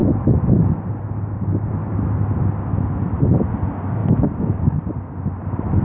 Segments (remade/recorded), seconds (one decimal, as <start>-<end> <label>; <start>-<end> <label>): 0.0-0.7 remade; 0.7-4.0 recorded; 4.0-4.8 remade; 4.8-5.8 recorded